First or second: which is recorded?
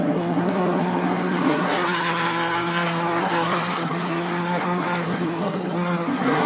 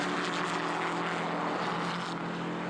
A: second